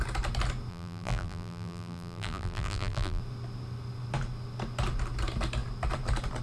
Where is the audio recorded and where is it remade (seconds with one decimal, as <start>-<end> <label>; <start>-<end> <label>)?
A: 0.0-0.7 recorded; 0.7-3.2 remade; 3.2-6.4 recorded

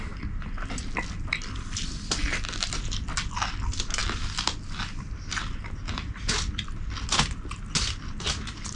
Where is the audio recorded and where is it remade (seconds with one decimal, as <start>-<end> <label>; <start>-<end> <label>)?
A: 0.0-8.8 recorded

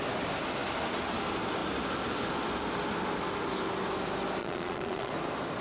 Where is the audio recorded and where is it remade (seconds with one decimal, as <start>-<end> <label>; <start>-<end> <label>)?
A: 0.0-4.4 recorded; 4.4-5.1 remade; 5.1-5.6 recorded

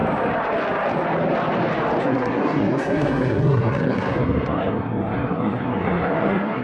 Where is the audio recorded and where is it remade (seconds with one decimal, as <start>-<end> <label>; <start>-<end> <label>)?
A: 0.0-2.0 recorded; 2.0-6.6 remade

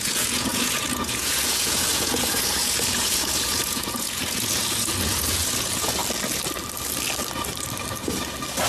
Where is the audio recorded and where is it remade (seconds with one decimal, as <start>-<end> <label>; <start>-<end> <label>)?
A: 0.0-6.0 remade; 6.0-8.7 recorded

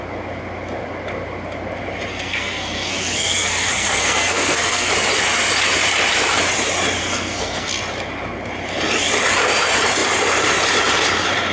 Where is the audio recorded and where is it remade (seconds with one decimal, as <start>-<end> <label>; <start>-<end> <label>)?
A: 0.0-2.1 recorded; 2.1-4.9 remade; 4.9-7.0 recorded; 7.0-7.7 remade; 7.7-11.5 recorded

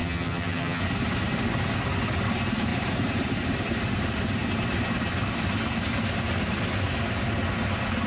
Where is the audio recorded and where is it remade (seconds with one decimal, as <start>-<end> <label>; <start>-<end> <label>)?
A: 0.0-0.8 remade; 0.8-8.1 recorded